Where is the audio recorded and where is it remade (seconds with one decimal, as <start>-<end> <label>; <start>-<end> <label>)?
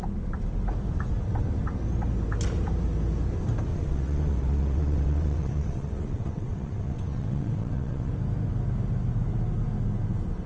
0.0-3.7 recorded; 3.7-8.1 remade; 8.1-10.5 recorded